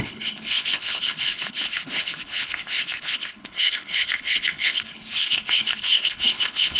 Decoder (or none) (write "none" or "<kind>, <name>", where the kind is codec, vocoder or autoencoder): codec, HILCodec